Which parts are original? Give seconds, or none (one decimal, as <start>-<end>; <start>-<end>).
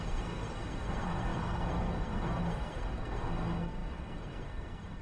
none